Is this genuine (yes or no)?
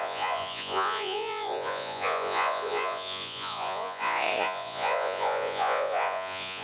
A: no